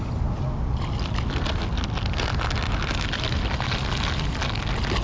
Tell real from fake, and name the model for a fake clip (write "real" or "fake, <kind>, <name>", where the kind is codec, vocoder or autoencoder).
real